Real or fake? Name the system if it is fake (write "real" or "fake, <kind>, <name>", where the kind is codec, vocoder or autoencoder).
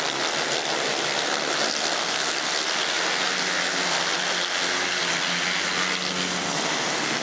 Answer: real